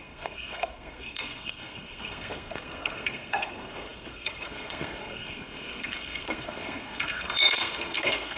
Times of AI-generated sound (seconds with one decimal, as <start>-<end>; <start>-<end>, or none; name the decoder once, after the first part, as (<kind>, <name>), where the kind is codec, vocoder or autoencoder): 0.0-8.4 (codec, SNAC)